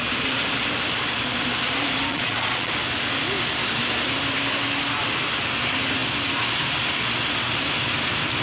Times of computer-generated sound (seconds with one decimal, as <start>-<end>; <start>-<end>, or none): 2.1-2.7